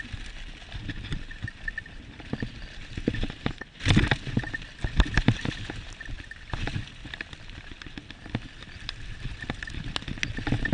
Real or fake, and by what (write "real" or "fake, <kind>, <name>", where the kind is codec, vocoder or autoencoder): real